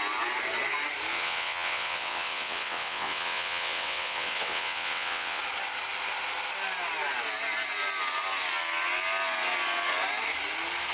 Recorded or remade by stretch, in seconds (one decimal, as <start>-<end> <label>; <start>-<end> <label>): 0.0-1.1 recorded; 1.1-5.4 remade; 5.4-10.9 recorded